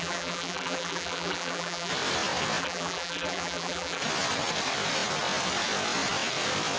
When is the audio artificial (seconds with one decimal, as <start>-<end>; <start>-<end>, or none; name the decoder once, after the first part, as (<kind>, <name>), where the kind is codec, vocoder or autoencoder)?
0.0-1.9 (vocoder, BigVGAN v2); 2.6-4.0